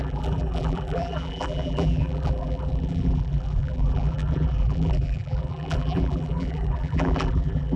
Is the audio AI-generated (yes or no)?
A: yes